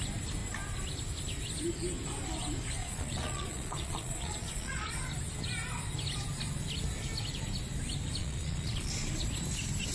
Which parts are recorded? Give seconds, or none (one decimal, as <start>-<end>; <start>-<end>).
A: 0.0-2.8; 4.9-8.2; 8.9-9.9